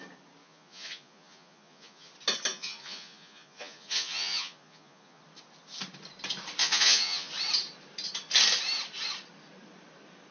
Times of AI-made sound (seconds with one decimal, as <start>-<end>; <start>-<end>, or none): 0.4-2.1; 2.5-5.2; 6.6-7.3